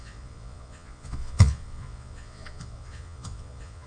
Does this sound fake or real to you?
fake